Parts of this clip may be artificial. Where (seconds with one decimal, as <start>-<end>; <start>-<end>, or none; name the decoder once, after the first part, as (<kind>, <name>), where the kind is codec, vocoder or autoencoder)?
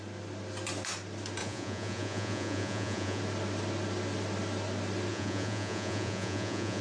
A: 1.4-3.2 (vocoder, Vocos); 5.1-6.8